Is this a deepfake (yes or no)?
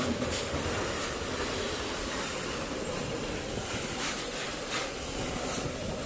yes